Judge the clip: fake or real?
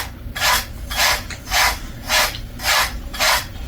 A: real